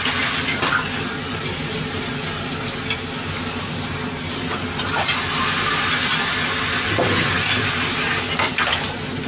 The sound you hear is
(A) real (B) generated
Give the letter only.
A